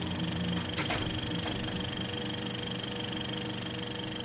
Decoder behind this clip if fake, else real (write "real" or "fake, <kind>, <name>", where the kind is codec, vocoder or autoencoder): real